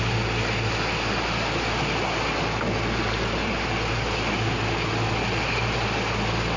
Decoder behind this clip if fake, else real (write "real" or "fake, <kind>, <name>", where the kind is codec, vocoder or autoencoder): real